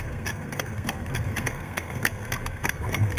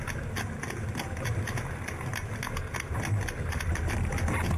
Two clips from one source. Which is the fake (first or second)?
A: first